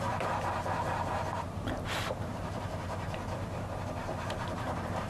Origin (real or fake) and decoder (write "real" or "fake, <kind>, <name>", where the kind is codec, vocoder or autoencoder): fake, vocoder, BigVGAN v2